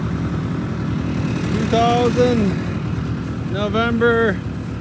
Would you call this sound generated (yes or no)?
no